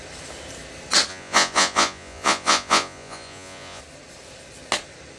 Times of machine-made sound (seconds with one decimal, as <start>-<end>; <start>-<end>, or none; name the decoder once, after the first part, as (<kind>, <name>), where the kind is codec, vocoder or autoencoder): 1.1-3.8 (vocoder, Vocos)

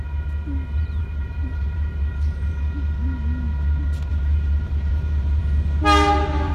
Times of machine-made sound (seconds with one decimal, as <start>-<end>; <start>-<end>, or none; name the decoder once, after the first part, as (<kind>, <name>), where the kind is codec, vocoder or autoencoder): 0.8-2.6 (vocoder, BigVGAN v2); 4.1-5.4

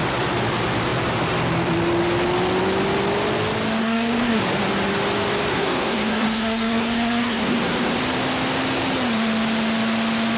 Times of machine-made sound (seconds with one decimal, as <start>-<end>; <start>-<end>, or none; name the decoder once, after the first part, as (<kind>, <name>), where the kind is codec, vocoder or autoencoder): 3.8-4.4 (codec, SNAC); 5.5-8.0